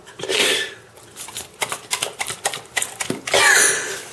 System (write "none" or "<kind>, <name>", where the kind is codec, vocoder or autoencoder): none